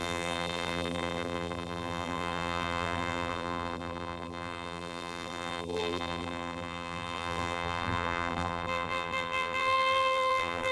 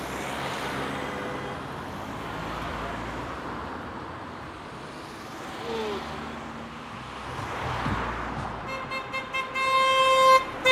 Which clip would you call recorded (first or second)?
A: second